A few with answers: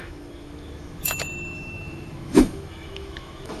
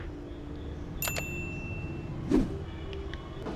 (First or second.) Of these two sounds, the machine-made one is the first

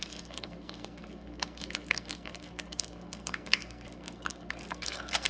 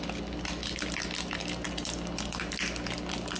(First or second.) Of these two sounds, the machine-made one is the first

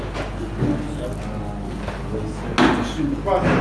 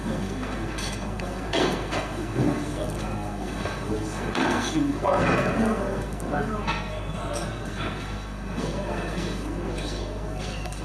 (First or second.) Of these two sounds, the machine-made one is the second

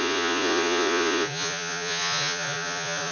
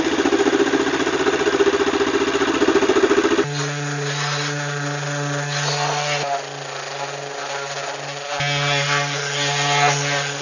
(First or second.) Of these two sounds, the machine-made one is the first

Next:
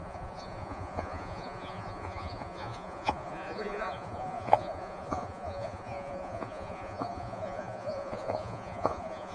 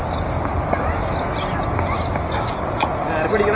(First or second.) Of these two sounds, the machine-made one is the first